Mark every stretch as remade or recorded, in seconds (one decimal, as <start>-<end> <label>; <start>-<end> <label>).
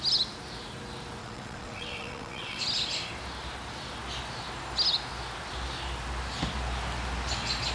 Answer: 0.0-1.2 recorded; 1.2-2.6 remade; 2.6-7.7 recorded